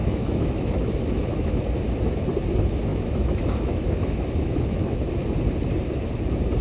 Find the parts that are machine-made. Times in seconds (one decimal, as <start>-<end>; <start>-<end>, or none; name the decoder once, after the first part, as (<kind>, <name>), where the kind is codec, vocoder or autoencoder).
0.0-1.6 (autoencoder, DAC-VAE); 2.9-5.0